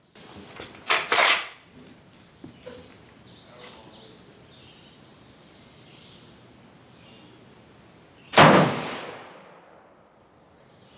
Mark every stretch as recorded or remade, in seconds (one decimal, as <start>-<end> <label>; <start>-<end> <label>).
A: 0.0-1.2 recorded; 1.2-2.0 remade; 2.0-11.0 recorded